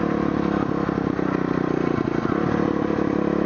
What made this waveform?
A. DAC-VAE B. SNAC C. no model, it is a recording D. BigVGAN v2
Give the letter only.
C